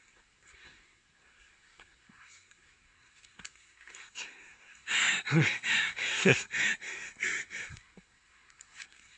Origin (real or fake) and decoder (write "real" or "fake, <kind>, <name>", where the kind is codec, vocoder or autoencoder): fake, codec, SNAC